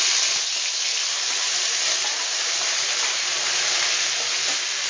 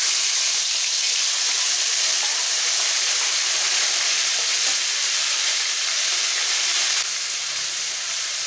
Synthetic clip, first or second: second